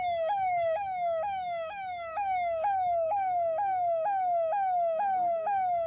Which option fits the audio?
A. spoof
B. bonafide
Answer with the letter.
A